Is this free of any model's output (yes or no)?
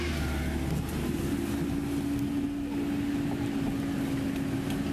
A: yes